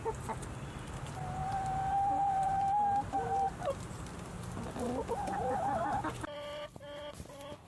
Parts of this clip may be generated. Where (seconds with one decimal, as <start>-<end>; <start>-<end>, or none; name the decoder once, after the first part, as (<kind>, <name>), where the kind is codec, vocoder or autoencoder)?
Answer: 1.4-3.9 (vocoder, BigVGAN v2)